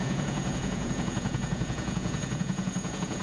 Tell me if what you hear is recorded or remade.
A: remade